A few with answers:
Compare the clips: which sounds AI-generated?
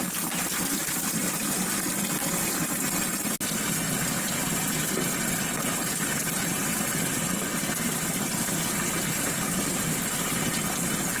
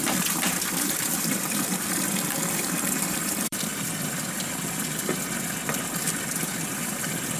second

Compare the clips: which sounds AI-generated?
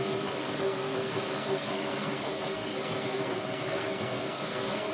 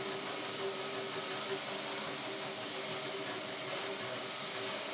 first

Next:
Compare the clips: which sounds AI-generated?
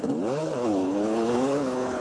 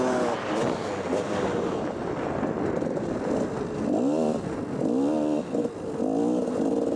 first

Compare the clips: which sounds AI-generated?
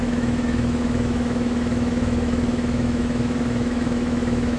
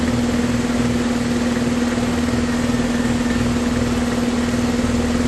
first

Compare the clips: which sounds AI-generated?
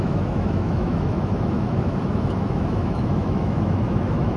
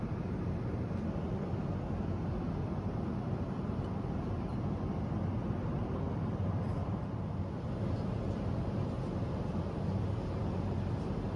first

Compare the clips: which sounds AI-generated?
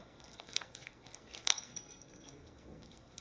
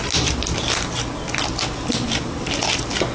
first